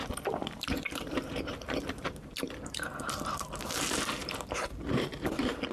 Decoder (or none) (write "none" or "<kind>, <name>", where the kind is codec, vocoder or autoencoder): vocoder, BigVGAN v2